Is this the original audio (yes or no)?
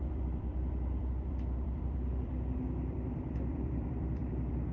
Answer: no